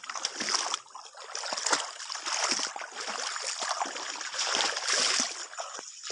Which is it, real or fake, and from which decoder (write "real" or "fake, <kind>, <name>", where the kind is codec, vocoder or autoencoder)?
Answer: real